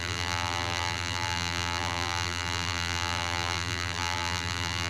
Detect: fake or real fake